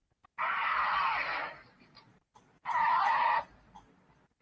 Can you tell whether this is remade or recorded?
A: recorded